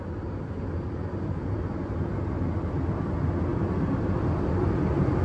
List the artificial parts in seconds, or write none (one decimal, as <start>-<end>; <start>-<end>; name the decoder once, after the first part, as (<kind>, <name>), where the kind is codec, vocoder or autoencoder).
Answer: none